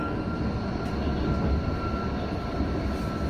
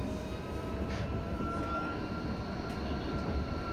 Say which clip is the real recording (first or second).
first